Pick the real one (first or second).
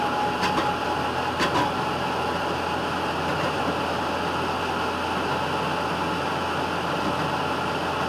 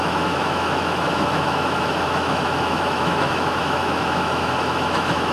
first